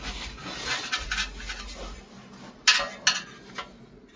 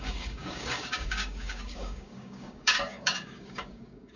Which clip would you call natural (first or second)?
first